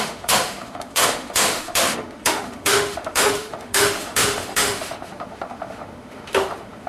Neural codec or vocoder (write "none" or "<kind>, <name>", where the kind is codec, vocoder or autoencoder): autoencoder, DAC-VAE